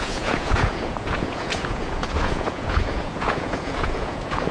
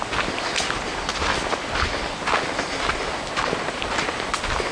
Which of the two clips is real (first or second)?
second